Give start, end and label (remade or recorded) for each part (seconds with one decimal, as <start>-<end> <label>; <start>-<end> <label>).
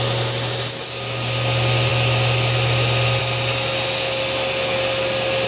0.0-5.5 recorded